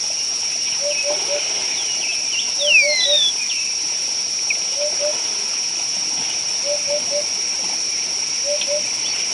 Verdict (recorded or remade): recorded